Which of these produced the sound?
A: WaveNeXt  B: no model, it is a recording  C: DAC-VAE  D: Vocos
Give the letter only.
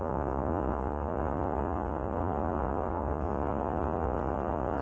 D